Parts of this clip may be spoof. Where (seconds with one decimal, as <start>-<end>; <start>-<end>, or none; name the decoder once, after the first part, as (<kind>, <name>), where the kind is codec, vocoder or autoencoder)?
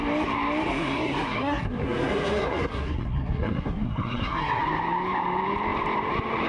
0.7-4.6 (codec, SNAC)